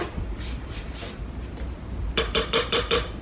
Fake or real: real